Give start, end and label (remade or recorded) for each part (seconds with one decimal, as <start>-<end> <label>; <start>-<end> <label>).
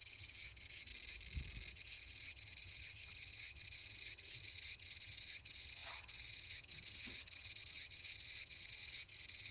0.0-0.9 remade; 0.9-1.7 recorded; 1.7-9.5 remade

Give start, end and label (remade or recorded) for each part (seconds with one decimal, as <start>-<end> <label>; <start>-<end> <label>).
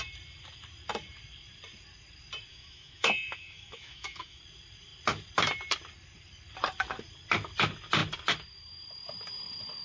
0.0-2.5 recorded; 2.5-4.4 remade; 4.4-9.8 recorded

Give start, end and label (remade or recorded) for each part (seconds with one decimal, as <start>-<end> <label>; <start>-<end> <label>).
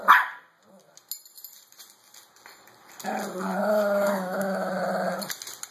0.0-3.6 recorded; 3.6-4.7 remade; 4.7-5.7 recorded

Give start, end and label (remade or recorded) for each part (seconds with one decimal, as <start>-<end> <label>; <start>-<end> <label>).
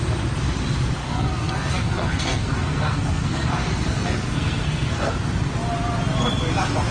0.0-1.0 recorded; 1.0-5.1 remade; 5.1-6.9 recorded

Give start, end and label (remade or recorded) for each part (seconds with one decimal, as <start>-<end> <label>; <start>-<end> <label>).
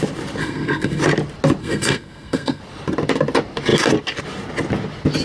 0.0-0.4 recorded; 0.4-1.0 remade; 1.0-1.6 recorded; 1.6-2.6 remade; 2.6-5.2 recorded